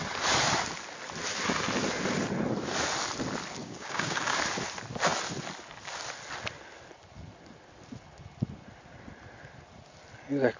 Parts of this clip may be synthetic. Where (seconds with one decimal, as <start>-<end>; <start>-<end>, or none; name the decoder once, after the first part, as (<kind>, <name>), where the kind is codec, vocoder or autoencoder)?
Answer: 3.6-4.4 (codec, DAC)